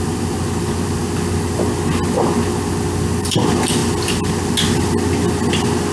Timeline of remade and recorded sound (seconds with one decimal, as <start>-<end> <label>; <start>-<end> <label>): 0.0-5.9 recorded